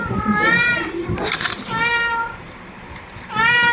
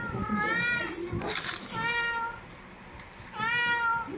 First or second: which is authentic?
second